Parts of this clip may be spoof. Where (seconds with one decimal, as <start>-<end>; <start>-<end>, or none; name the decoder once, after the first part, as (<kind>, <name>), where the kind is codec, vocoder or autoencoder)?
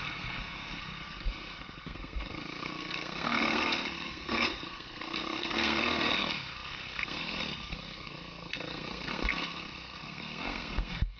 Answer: 0.0-11.2 (codec, SNAC)